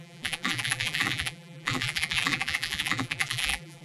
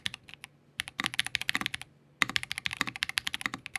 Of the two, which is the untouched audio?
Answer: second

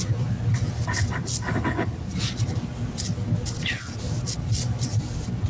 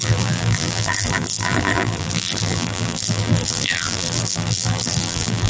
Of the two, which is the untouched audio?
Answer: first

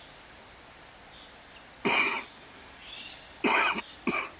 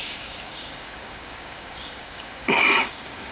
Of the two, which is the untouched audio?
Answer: first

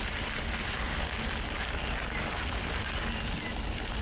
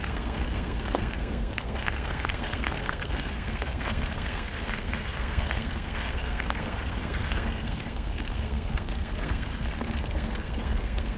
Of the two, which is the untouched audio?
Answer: first